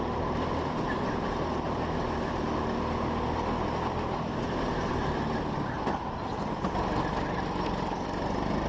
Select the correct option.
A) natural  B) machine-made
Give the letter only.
A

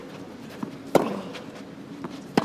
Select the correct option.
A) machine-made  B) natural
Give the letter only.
B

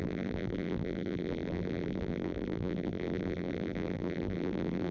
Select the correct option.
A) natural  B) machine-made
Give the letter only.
B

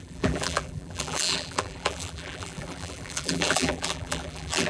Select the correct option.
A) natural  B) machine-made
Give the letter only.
B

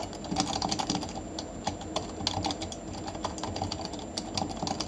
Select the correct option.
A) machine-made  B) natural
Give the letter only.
B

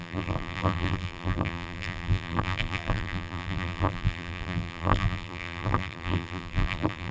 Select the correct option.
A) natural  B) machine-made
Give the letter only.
B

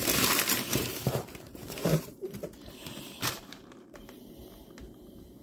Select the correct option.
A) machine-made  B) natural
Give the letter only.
A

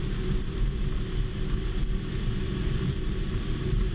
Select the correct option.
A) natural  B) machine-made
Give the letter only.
B